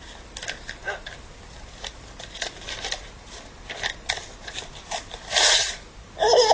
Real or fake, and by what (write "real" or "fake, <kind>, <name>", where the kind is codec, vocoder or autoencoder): real